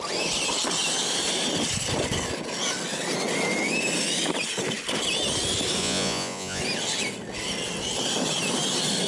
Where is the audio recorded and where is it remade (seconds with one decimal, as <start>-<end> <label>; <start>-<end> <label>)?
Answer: 0.0-5.8 recorded; 5.8-6.6 remade; 6.6-9.1 recorded